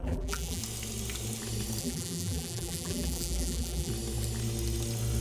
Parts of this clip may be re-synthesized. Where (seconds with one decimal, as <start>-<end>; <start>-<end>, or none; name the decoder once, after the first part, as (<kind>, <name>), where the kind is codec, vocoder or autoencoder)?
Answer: 0.0-0.6 (vocoder, BigVGAN v2); 1.8-3.9

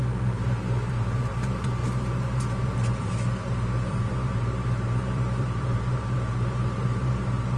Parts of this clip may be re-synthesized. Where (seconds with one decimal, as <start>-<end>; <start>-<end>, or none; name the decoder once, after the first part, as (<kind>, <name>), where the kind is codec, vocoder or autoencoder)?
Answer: 0.0-7.6 (vocoder, BigVGAN v2)

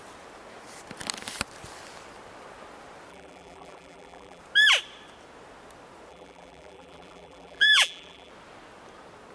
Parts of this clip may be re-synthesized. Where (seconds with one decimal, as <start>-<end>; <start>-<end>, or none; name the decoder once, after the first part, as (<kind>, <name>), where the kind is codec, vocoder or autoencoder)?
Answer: 3.1-4.4 (vocoder, BigVGAN v2); 6.1-8.3

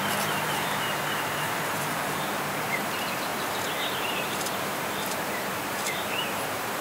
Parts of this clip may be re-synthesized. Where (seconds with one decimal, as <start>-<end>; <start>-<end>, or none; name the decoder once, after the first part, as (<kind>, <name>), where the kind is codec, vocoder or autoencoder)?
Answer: 0.0-3.3 (vocoder, BigVGAN v2); 3.9-6.8

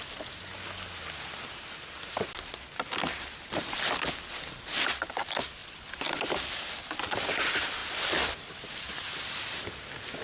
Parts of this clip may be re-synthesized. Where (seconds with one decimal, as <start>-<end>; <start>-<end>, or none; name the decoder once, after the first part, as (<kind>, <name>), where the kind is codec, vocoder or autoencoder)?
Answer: 5.6-6.3 (vocoder, BigVGAN v2); 7.8-8.7

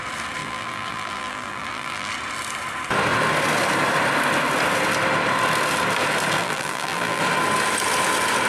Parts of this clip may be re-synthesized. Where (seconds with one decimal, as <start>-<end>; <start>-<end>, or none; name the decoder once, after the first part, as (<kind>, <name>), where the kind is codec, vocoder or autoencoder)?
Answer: 0.4-2.1 (vocoder, BigVGAN v2); 6.4-7.2

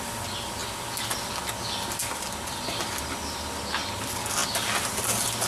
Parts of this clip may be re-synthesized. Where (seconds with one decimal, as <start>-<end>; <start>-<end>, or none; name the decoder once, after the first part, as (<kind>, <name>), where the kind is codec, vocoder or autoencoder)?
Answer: none